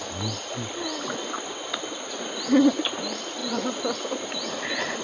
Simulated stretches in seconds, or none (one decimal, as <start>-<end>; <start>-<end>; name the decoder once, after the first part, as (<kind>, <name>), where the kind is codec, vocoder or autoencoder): none

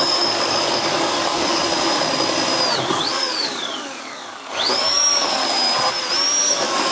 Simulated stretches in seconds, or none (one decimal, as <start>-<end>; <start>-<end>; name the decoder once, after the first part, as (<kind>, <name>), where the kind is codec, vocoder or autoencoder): 0.0-1.6 (codec, DAC); 2.8-5.4; 6.4-6.9

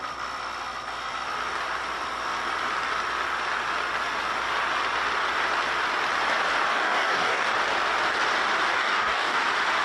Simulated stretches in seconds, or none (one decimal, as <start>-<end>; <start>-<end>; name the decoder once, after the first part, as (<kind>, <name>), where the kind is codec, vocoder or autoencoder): 6.7-7.5 (codec, DAC); 8.7-9.4